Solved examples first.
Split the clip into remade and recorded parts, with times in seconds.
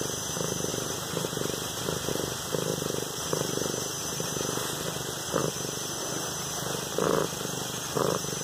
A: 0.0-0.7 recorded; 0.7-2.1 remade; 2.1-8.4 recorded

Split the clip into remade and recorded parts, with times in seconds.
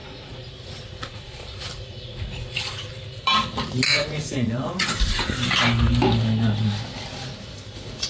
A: 0.0-2.9 remade; 2.9-3.9 recorded; 3.9-4.9 remade; 4.9-8.1 recorded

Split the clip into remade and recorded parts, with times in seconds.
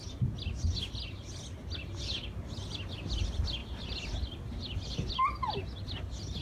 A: 0.0-6.4 recorded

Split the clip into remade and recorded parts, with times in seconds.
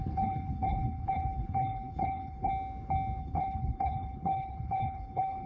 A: 0.0-2.5 remade; 2.5-3.2 recorded; 3.2-5.5 remade